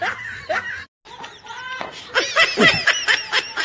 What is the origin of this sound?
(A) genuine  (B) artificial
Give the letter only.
A